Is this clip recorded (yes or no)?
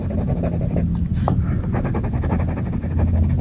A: yes